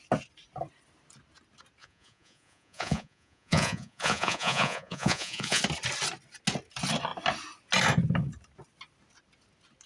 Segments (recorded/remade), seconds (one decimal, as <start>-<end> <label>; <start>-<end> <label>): 0.0-1.8 recorded; 1.8-5.6 remade; 5.6-9.9 recorded